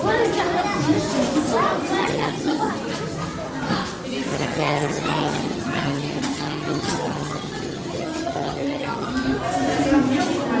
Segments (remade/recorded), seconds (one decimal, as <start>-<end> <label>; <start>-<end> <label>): 0.0-2.0 recorded; 2.0-2.7 remade; 2.7-4.3 recorded; 4.3-9.1 remade; 9.1-10.6 recorded